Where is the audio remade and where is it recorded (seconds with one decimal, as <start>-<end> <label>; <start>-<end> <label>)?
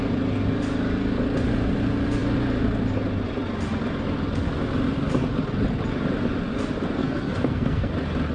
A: 0.0-7.0 recorded; 7.0-7.9 remade; 7.9-8.3 recorded